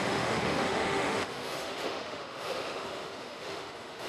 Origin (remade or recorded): remade